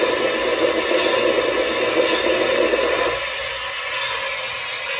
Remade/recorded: recorded